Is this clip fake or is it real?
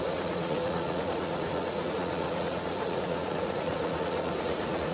fake